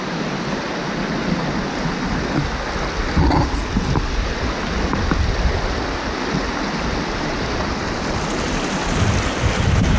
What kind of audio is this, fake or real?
real